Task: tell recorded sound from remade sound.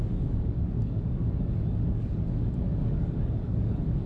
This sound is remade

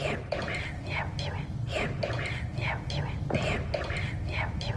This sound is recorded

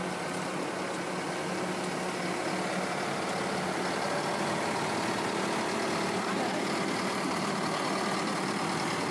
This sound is recorded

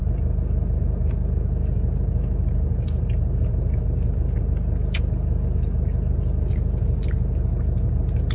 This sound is recorded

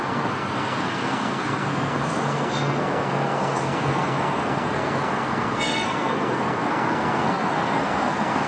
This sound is remade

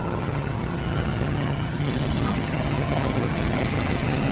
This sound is remade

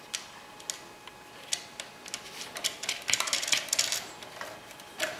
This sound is recorded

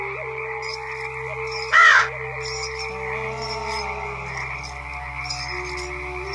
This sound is recorded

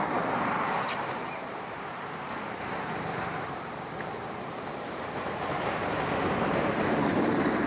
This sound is remade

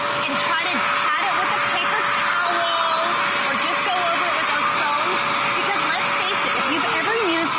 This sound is recorded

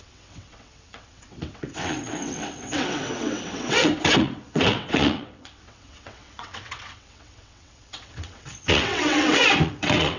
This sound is remade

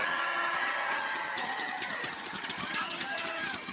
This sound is remade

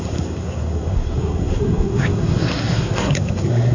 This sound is remade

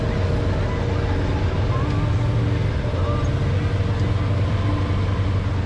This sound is recorded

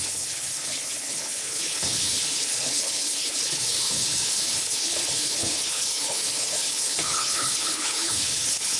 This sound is remade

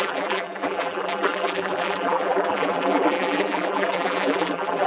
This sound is remade